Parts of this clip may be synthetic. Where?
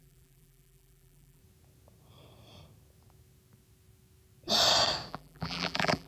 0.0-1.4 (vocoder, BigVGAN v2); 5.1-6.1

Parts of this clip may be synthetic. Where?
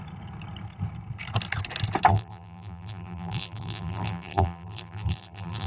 2.1-5.7 (vocoder, BigVGAN v2)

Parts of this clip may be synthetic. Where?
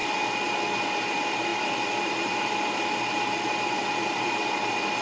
0.8-5.0 (vocoder, BigVGAN v2)